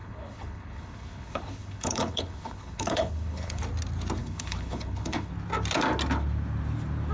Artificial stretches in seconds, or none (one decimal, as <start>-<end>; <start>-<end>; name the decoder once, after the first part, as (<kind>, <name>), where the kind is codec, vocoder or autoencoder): 0.0-3.6 (codec, HILCodec); 4.2-5.3